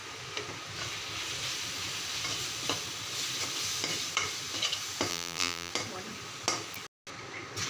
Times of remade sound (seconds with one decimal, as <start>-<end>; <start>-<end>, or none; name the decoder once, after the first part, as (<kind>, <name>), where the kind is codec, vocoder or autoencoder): 5.1-5.7 (vocoder, BigVGAN v2)